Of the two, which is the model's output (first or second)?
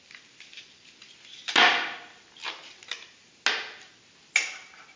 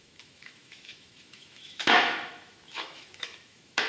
second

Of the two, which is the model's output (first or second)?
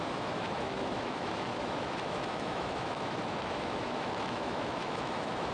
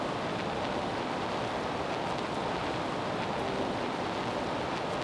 first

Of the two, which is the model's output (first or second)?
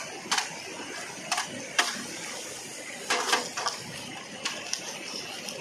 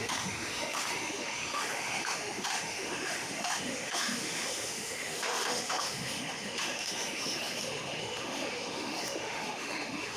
second